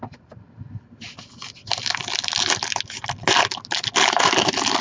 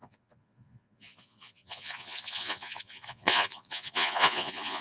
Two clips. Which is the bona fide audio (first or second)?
first